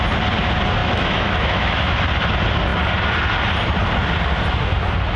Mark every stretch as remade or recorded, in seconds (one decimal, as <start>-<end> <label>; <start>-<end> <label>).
0.0-0.8 recorded; 0.8-2.0 remade; 2.0-5.2 recorded

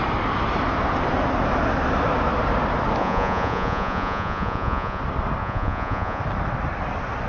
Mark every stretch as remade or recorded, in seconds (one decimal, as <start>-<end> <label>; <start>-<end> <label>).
0.0-3.0 recorded; 3.0-5.0 remade; 5.0-5.4 recorded; 5.4-6.2 remade; 6.2-7.3 recorded

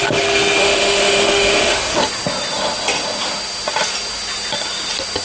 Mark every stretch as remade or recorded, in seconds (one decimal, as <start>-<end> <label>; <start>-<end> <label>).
0.0-0.6 recorded; 0.6-1.9 remade; 1.9-5.2 recorded

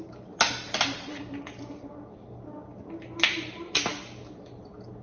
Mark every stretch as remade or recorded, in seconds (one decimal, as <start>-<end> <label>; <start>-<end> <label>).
0.0-5.0 recorded